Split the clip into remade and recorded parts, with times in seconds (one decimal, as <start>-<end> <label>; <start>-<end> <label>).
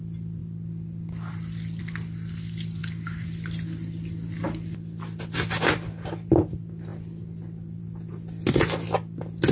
0.0-9.5 recorded